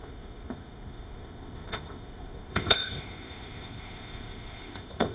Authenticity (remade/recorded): remade